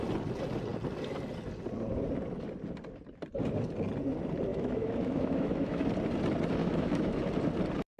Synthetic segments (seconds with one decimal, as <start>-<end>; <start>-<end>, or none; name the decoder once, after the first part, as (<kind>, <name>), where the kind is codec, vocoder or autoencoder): 4.5-5.9 (autoencoder, DAC-VAE); 6.6-7.2